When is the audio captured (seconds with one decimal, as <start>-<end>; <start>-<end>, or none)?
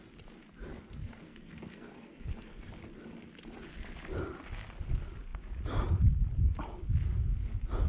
0.0-0.7; 2.7-7.9